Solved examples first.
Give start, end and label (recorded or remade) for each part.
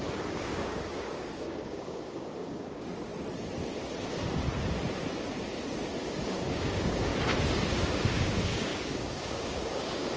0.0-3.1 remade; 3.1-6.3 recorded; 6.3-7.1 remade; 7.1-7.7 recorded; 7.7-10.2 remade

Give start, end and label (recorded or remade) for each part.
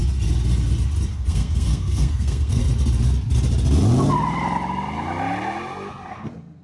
0.0-1.1 recorded; 1.1-2.6 remade; 2.6-6.1 recorded; 6.1-6.6 remade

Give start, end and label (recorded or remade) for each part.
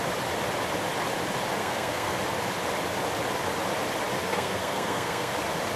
0.0-1.6 recorded; 1.6-2.2 remade; 2.2-4.2 recorded; 4.2-5.3 remade; 5.3-5.8 recorded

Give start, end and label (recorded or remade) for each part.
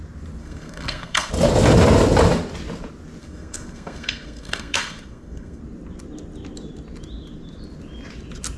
0.0-0.4 recorded; 0.4-1.3 remade; 1.3-3.2 recorded; 3.2-5.6 remade; 5.6-8.6 recorded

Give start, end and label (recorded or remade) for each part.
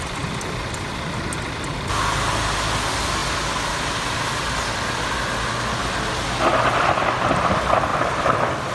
0.0-7.9 recorded; 7.9-8.7 remade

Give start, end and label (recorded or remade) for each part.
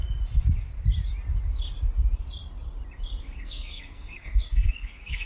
0.0-3.2 recorded; 3.2-5.3 remade